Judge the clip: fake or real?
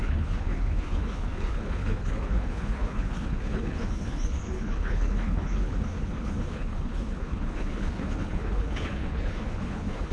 fake